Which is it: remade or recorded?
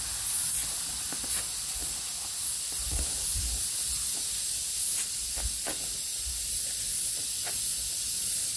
recorded